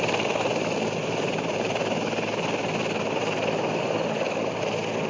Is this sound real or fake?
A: real